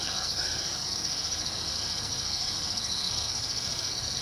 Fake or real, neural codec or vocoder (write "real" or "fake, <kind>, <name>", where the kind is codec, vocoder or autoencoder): fake, codec, SNAC